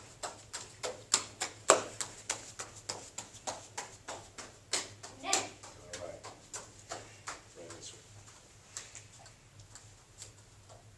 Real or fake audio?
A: real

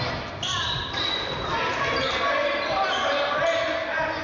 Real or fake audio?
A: real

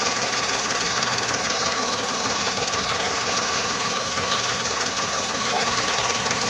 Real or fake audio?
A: fake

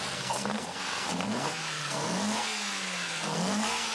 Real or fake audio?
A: fake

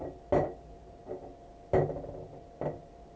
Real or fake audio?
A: real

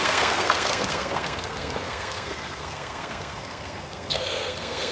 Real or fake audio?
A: fake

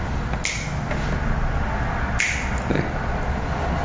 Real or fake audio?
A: real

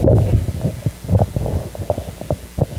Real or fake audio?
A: real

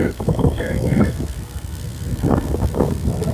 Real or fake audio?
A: fake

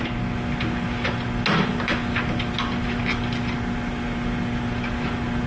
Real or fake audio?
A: real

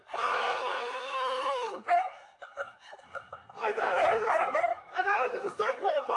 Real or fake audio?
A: fake